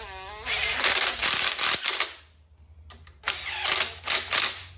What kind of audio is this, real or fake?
real